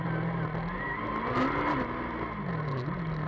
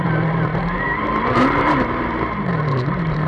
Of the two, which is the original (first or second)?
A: first